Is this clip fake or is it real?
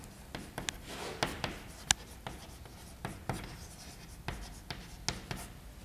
real